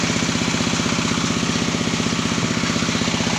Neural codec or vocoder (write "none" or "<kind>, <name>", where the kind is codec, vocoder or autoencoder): none